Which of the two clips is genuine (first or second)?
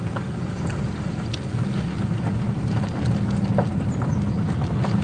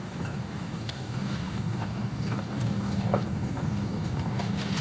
first